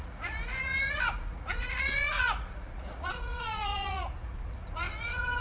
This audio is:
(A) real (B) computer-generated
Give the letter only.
B